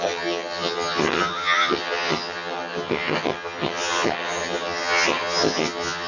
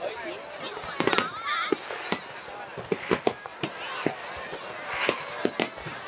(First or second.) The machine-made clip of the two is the first